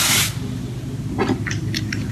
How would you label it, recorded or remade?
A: recorded